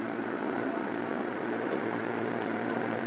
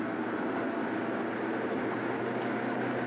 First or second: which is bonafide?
second